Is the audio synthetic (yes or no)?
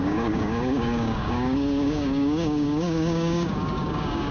yes